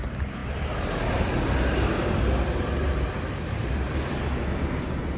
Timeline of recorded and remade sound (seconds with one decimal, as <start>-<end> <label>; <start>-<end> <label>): 0.0-5.2 recorded